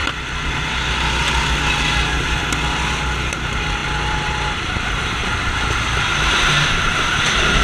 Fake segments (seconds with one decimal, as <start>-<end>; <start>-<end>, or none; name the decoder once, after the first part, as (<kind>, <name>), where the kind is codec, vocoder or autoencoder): 1.8-2.4 (vocoder, BigVGAN v2); 3.3-5.3; 6.4-7.6